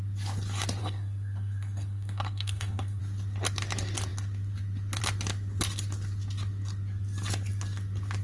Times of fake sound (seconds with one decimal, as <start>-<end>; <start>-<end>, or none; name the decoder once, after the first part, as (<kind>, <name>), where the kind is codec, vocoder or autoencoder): 0.8-3.0 (codec, SNAC)